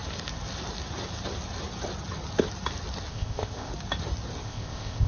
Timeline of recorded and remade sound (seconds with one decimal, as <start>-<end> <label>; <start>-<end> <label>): 0.0-3.1 recorded; 3.1-3.7 remade; 3.7-4.4 recorded; 4.4-5.1 remade